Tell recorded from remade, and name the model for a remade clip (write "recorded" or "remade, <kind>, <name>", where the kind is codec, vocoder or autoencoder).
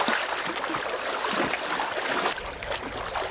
recorded